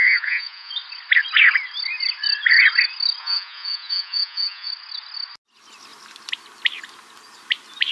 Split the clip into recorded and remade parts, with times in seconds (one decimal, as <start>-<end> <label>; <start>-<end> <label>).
0.0-0.7 remade; 0.7-3.2 recorded; 3.2-4.7 remade; 4.7-7.9 recorded